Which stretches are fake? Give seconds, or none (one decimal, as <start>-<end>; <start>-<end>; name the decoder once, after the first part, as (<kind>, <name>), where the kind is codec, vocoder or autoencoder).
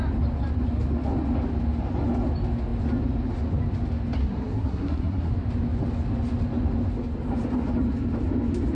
4.2-5.3 (codec, SNAC)